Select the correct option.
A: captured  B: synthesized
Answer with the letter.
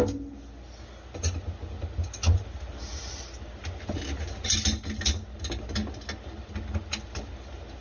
A